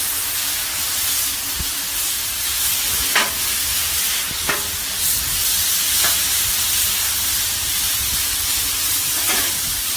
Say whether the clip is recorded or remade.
recorded